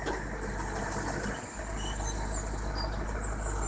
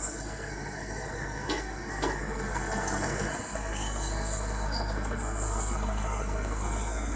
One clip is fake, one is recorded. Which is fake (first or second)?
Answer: second